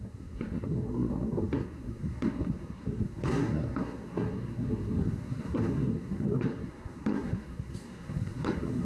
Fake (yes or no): yes